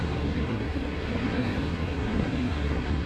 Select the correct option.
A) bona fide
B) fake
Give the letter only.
B